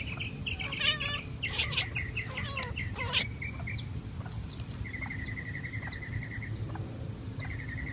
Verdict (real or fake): real